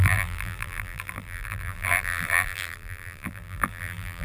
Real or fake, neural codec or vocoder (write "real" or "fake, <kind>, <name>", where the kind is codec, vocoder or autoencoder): fake, vocoder, BigVGAN v2